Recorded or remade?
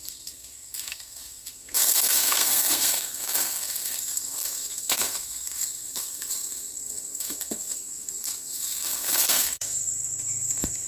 remade